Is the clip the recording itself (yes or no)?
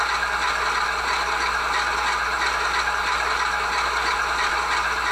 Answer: yes